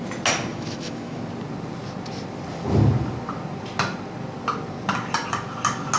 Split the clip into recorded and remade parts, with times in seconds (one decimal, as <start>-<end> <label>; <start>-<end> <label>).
0.0-0.5 recorded; 0.5-1.2 remade; 1.2-6.0 recorded